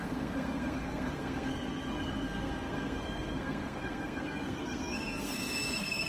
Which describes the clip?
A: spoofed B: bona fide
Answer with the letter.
A